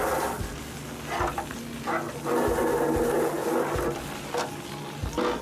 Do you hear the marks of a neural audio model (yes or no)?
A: no